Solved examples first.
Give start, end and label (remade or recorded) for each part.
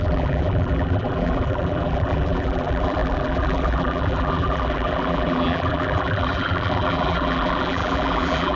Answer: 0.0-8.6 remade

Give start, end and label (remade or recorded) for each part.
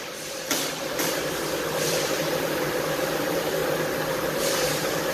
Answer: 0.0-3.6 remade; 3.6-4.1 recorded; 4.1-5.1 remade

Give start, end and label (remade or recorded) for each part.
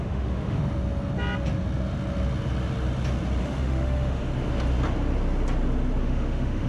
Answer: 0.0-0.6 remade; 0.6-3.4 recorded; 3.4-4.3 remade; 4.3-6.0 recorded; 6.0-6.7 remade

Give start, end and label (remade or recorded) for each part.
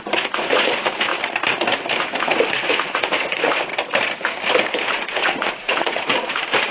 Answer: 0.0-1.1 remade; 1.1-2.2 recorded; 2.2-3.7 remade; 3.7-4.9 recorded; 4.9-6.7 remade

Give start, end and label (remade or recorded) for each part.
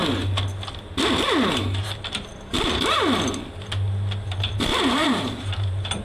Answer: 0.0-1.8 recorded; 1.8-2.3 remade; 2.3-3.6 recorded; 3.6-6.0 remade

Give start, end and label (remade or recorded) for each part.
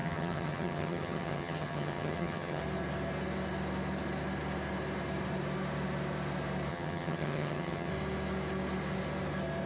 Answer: 0.0-2.6 remade; 2.6-6.7 recorded; 6.7-7.9 remade; 7.9-9.7 recorded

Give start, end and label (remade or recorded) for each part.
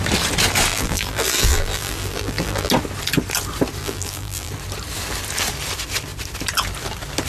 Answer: 0.0-0.7 recorded; 0.7-2.7 remade; 2.7-3.8 recorded; 3.8-4.5 remade; 4.5-7.3 recorded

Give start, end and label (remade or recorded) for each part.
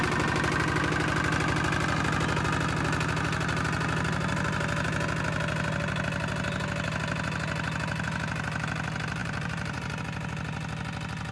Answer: 0.0-9.2 recorded; 9.2-10.0 remade; 10.0-11.3 recorded